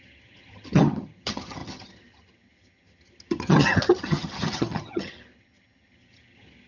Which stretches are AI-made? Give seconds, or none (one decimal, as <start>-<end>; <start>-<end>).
0.0-6.7